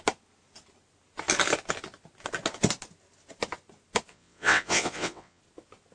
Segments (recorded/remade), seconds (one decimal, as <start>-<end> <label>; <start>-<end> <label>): 0.0-4.1 recorded; 4.1-5.4 remade; 5.4-5.9 recorded